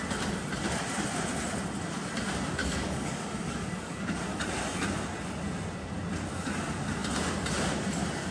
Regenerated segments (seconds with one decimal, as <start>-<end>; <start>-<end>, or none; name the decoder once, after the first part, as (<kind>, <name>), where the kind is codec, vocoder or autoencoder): 2.6-4.2 (codec, DAC)